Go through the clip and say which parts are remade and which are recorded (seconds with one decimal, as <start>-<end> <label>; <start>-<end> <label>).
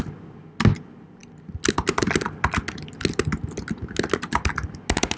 0.0-5.2 recorded